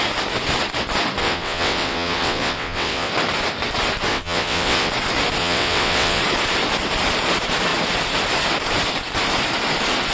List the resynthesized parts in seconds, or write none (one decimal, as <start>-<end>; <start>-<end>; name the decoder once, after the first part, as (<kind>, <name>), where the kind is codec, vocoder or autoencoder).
1.2-3.1 (vocoder, WaveNeXt); 4.1-4.9; 5.4-6.2